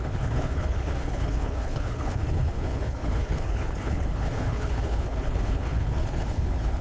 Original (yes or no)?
no